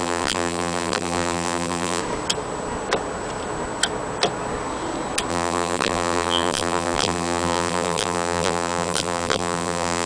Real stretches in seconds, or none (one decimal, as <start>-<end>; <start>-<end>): 2.0-5.3